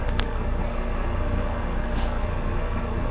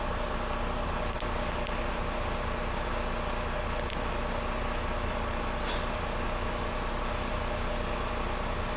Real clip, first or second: second